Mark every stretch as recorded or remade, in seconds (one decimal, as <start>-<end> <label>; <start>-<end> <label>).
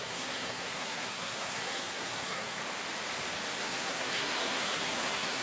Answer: 0.0-2.6 remade; 2.6-3.6 recorded; 3.6-5.4 remade